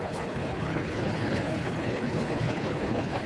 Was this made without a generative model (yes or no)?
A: no